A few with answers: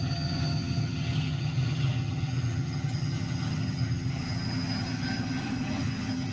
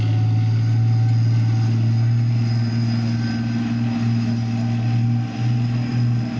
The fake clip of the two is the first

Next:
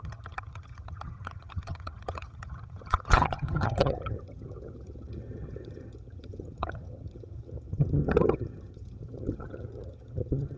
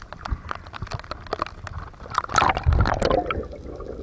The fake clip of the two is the first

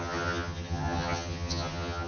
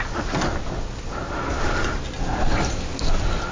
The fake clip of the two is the first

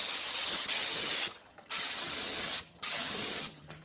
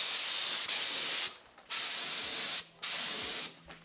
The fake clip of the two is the first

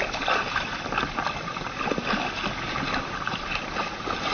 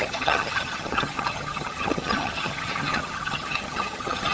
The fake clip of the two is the second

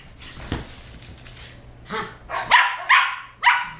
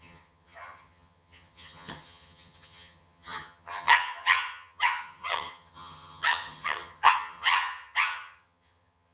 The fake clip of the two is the second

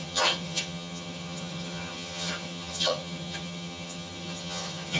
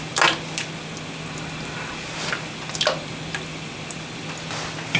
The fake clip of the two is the first